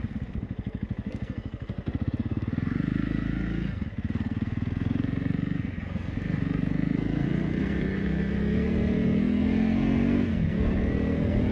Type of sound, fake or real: fake